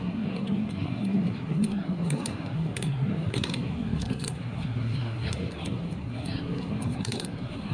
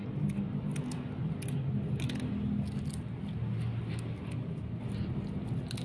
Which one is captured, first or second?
second